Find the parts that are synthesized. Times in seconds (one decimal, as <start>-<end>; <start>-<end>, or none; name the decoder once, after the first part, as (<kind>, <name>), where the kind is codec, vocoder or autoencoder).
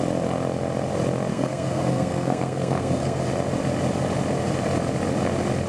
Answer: 1.3-3.2 (codec, SNAC)